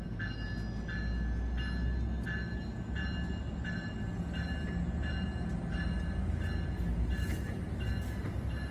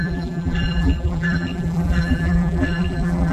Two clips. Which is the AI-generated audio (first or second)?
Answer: second